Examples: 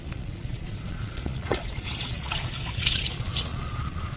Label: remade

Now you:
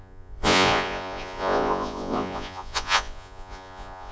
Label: remade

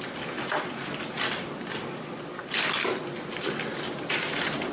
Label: recorded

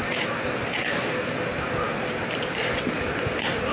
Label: recorded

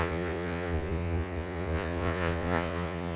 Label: remade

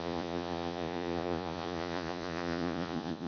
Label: remade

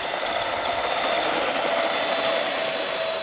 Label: recorded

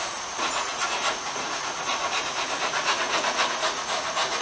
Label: remade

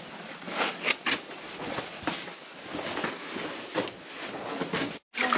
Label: recorded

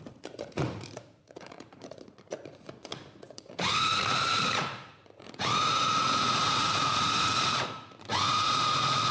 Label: remade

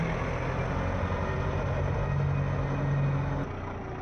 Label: recorded